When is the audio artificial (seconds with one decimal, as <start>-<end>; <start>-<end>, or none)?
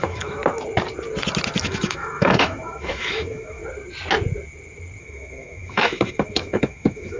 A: 0.0-0.4; 1.6-3.6; 5.0-7.2